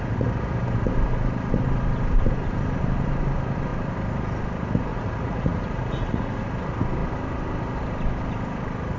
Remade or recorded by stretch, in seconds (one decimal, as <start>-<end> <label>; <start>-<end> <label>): 0.0-4.9 recorded; 4.9-6.4 remade; 6.4-9.0 recorded